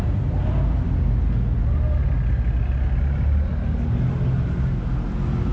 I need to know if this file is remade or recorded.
recorded